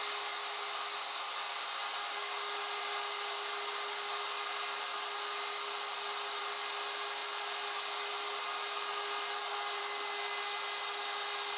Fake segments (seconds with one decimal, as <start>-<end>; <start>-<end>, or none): none